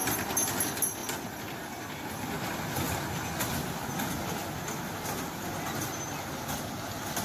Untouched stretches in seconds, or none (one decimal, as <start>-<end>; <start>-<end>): 0.6-7.2